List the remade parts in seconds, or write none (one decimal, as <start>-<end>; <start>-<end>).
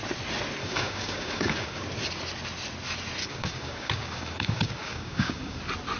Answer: 0.6-1.8; 3.2-5.6